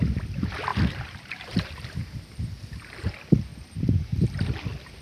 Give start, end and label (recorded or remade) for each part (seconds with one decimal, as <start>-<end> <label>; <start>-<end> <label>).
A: 0.0-0.7 recorded; 0.7-2.6 remade; 2.6-3.5 recorded; 3.5-4.1 remade; 4.1-5.0 recorded